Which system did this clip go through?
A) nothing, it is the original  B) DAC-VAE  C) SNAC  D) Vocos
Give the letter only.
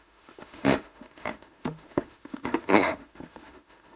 B